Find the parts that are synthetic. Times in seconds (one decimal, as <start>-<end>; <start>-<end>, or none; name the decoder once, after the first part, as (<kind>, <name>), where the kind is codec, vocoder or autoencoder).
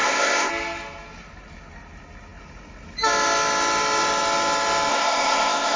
0.0-0.5 (codec, ZipCodec); 4.9-5.8